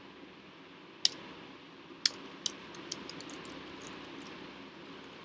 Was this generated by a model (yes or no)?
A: no